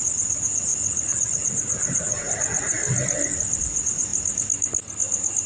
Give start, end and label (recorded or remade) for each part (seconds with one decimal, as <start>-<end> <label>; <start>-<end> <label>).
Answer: 0.0-2.8 remade; 2.8-3.6 recorded; 3.6-4.1 remade; 4.1-5.5 recorded